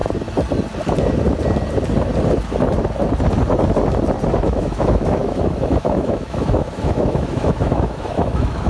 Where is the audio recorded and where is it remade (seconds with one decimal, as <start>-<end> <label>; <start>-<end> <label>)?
0.0-4.4 recorded; 4.4-8.7 remade